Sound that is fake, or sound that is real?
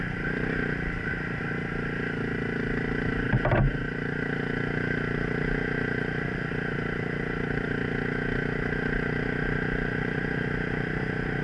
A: real